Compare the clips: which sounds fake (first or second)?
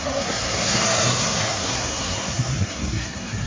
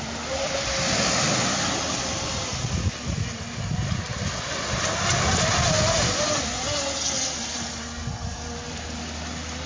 first